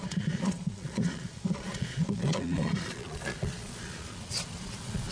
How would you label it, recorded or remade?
remade